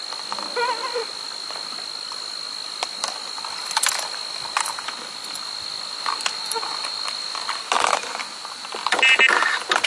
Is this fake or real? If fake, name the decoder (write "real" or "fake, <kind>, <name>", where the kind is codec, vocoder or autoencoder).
real